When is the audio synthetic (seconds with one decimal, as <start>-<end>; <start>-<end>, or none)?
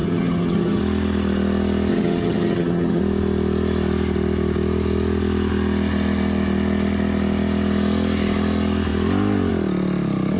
0.0-0.8; 1.9-3.0